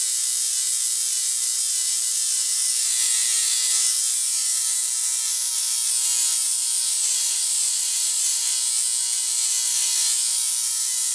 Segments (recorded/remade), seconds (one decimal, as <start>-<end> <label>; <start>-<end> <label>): 0.0-6.9 recorded; 6.9-8.4 remade; 8.4-11.1 recorded